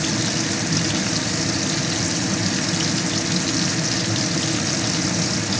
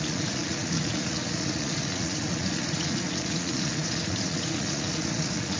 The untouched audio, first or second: first